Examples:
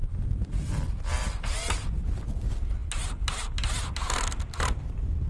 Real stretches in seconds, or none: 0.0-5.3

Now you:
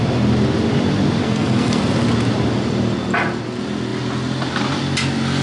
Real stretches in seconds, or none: 0.0-1.2; 1.8-5.4

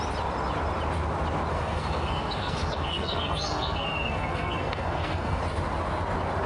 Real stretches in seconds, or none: 0.0-1.5; 5.4-6.5

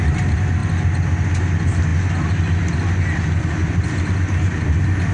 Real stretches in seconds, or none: 0.0-5.1